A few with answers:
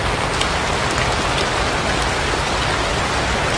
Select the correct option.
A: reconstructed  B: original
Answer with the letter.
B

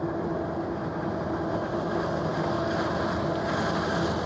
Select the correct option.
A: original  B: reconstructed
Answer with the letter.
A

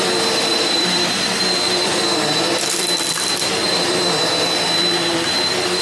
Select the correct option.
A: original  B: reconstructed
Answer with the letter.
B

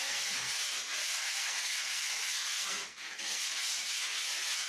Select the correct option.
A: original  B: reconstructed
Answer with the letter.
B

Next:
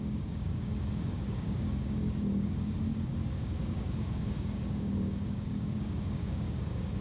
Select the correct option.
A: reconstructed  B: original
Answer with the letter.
A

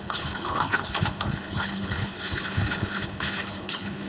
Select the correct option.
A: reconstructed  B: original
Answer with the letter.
A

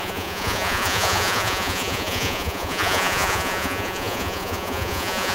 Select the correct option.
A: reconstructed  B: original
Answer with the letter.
A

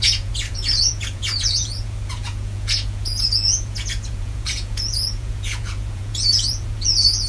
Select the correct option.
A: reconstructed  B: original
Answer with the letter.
A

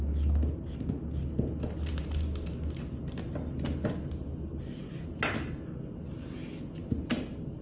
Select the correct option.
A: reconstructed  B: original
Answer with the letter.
B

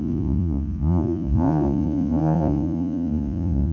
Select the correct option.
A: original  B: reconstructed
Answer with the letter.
B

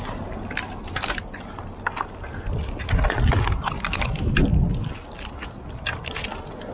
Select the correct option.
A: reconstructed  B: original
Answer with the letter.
B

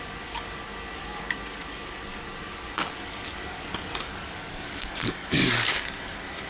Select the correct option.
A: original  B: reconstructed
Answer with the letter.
B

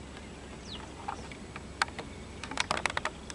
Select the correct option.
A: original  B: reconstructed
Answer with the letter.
A